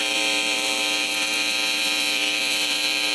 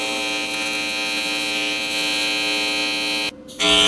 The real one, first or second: second